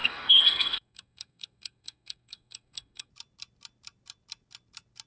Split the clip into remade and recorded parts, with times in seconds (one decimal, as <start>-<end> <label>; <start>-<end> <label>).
0.0-3.1 remade; 3.1-5.1 recorded